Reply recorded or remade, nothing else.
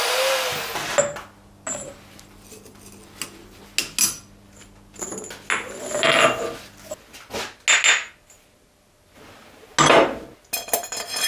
recorded